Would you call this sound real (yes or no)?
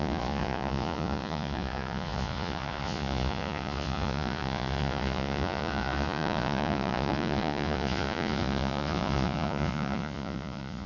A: no